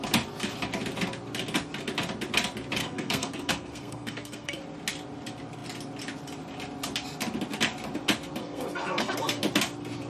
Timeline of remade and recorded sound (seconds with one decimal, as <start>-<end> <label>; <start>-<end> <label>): 0.0-2.8 recorded; 2.8-4.6 remade; 4.6-8.4 recorded; 8.4-9.4 remade; 9.4-10.1 recorded